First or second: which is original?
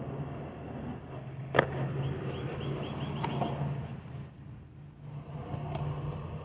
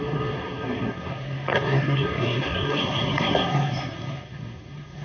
first